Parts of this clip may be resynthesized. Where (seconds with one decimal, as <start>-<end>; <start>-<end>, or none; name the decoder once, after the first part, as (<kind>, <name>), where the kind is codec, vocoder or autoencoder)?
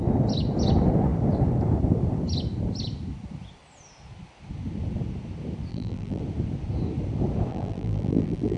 5.7-6.2 (vocoder, BigVGAN v2); 7.5-8.6